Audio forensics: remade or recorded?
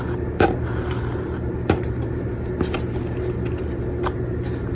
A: recorded